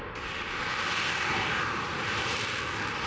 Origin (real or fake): real